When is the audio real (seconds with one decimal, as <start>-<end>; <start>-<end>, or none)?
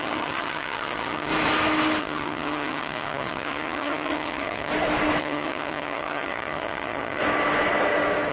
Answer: 1.3-2.0; 4.7-5.2; 7.2-8.3